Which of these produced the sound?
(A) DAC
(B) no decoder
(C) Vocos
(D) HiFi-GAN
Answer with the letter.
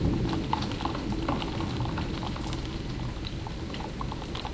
B